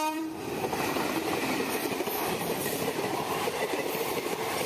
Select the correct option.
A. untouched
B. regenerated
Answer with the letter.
B